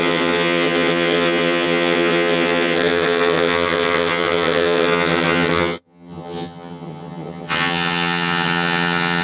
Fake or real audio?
fake